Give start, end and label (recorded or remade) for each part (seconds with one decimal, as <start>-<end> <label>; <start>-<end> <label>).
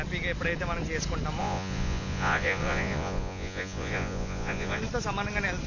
0.0-1.4 recorded; 1.4-4.8 remade; 4.8-5.7 recorded